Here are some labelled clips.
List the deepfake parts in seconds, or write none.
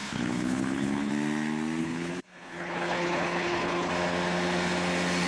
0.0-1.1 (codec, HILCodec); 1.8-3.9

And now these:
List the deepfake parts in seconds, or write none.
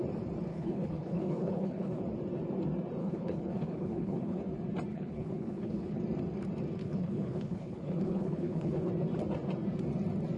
0.5-2.0 (codec, HILCodec); 3.0-4.4; 4.9-6.0; 6.8-8.9